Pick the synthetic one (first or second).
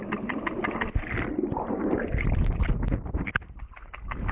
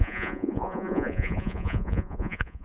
second